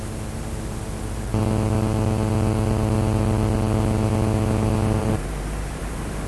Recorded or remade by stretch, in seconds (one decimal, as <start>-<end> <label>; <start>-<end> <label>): 0.0-1.3 remade; 1.3-5.0 recorded; 5.0-6.3 remade